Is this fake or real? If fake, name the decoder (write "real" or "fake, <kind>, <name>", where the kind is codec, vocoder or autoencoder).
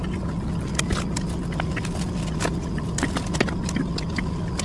real